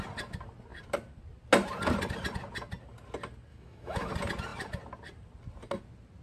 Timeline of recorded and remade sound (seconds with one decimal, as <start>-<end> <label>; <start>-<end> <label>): 0.0-3.5 recorded; 3.5-4.1 remade; 4.1-6.2 recorded